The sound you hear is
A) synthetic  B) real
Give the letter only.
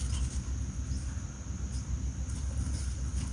B